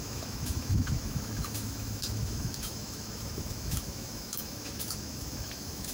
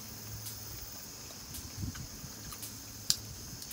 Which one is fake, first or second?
first